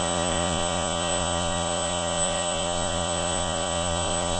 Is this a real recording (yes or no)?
no